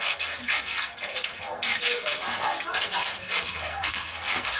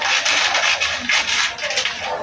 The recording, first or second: second